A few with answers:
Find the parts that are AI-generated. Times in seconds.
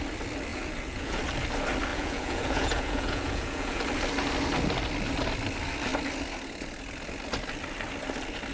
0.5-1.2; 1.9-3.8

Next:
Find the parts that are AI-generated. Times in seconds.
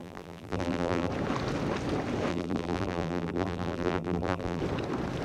0.0-1.1; 2.3-4.6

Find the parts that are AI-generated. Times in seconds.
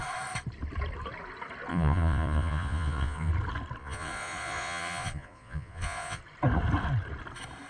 1.7-3.3; 3.8-6.2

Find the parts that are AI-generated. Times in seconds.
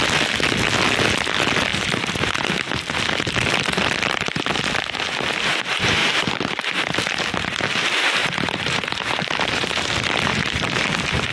1.7-2.2; 6.0-6.6; 8.2-9.9; 10.3-10.9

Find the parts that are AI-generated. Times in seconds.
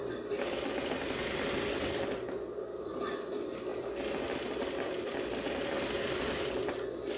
none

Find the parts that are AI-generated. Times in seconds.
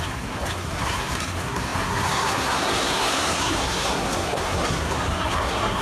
0.0-5.8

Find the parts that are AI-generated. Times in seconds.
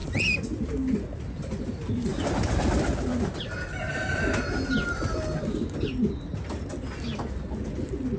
none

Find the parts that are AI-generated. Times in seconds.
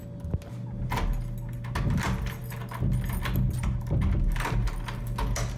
none